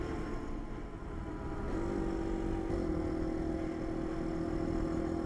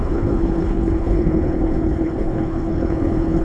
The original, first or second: first